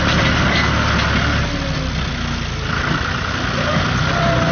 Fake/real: real